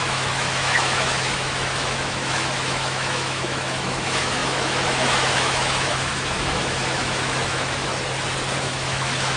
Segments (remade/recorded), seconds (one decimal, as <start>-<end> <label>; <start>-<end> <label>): 0.0-7.9 remade; 7.9-8.6 recorded; 8.6-9.4 remade